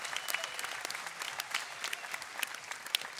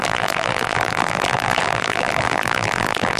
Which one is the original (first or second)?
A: first